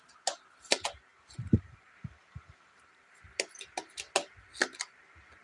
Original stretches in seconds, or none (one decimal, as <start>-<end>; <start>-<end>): 0.0-1.1; 3.0-5.4